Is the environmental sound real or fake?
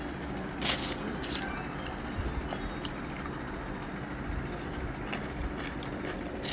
real